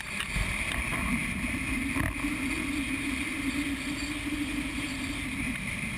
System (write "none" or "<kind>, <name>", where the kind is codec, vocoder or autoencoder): none